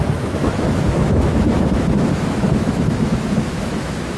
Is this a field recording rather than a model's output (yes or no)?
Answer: no